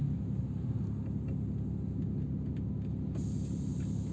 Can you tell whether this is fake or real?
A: real